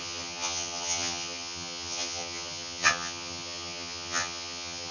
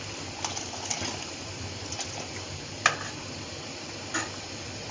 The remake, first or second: first